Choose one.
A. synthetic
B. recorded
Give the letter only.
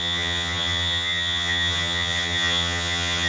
A